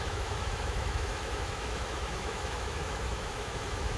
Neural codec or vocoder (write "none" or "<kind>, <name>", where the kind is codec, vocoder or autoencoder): autoencoder, DAC-VAE